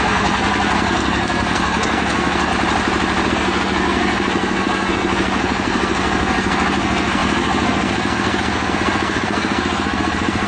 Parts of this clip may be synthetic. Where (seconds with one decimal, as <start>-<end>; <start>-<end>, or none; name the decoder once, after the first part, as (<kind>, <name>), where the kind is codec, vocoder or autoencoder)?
0.0-2.5 (codec, SNAC); 3.3-10.5